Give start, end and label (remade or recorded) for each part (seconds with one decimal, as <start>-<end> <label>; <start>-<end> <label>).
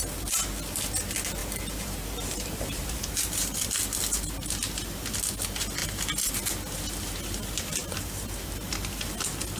0.0-1.4 recorded; 1.4-3.6 remade; 3.6-7.8 recorded; 7.8-8.7 remade; 8.7-9.6 recorded